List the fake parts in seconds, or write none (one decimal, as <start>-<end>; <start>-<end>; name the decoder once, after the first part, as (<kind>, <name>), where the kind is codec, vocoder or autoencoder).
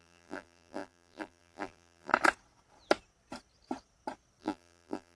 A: 0.0-2.1 (vocoder, BigVGAN v2); 4.4-5.1